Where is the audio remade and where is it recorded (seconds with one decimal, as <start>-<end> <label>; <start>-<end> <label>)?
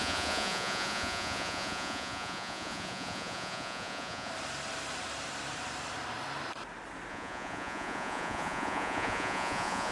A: 0.0-4.3 remade; 4.3-7.1 recorded; 7.1-9.9 remade